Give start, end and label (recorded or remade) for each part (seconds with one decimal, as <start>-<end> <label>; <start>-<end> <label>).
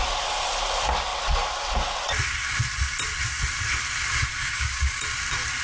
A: 0.0-4.4 recorded; 4.4-5.0 remade; 5.0-5.6 recorded